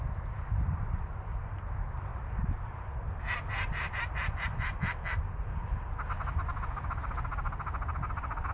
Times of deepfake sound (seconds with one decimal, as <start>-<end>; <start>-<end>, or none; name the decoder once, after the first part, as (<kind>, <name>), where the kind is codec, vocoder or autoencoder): 2.1-3.9 (vocoder, BigVGAN v2); 7.3-8.1